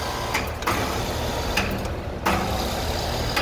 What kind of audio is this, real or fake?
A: real